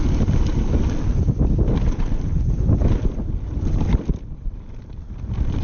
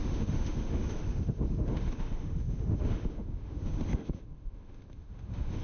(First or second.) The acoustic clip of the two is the first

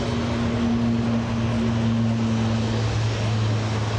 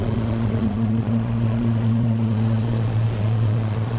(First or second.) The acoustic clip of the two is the first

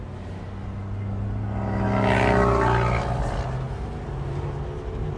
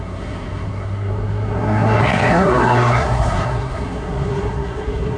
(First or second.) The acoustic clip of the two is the first